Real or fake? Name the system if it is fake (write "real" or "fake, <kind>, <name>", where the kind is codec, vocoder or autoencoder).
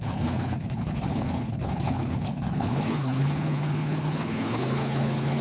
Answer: fake, codec, HILCodec